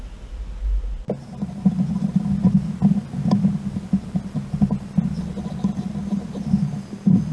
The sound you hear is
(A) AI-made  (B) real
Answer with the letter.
B